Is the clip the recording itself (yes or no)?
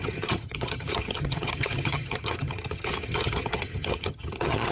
no